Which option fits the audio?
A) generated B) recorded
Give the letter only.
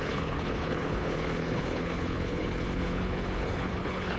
A